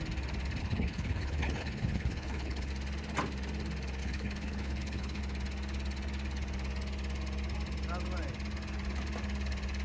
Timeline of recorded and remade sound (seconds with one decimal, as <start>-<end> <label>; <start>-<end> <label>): 0.0-0.6 recorded; 0.6-2.7 remade; 2.7-4.0 recorded; 4.0-5.2 remade; 5.2-9.8 recorded